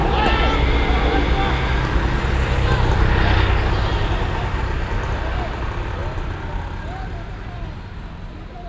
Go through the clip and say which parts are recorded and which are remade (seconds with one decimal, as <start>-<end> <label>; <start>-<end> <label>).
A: 0.0-8.7 recorded